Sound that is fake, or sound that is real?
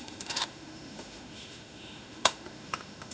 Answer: fake